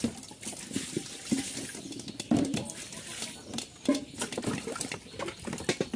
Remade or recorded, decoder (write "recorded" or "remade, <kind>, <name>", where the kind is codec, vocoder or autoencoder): recorded